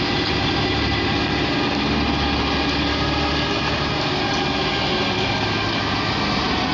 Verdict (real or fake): real